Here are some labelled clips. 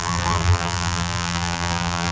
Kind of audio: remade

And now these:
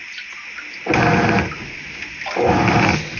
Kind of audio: recorded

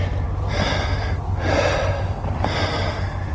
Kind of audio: recorded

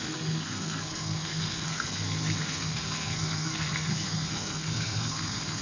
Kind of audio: remade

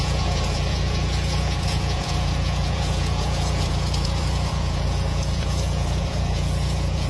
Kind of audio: remade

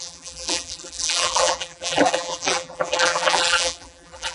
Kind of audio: remade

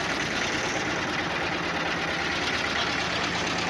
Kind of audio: recorded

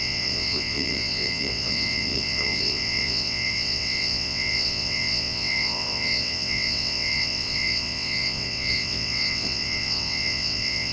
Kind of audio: remade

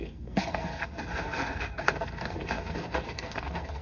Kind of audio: remade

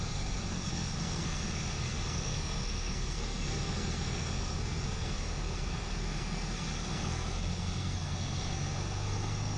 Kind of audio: remade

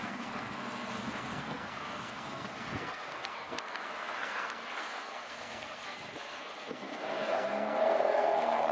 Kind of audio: remade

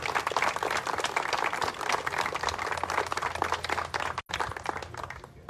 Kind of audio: recorded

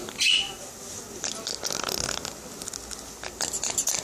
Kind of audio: recorded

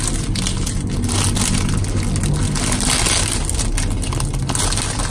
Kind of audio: recorded